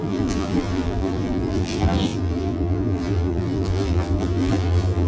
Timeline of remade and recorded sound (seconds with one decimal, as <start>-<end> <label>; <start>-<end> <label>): 0.0-5.1 remade